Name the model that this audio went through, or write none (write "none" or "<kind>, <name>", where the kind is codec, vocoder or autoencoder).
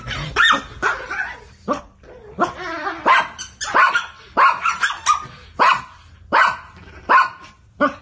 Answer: none